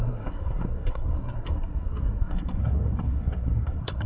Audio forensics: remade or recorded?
remade